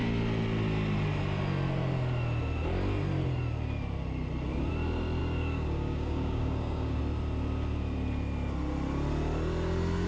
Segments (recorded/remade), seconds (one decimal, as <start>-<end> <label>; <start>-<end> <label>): 0.0-5.2 recorded; 5.2-7.0 remade; 7.0-10.1 recorded